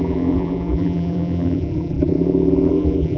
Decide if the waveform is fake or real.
fake